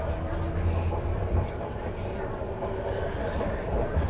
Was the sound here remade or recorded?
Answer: remade